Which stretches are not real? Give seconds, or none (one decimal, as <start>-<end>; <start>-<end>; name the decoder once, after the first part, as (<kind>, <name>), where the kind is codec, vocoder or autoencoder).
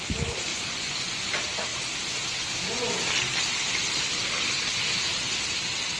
0.5-1.2 (vocoder, Vocos)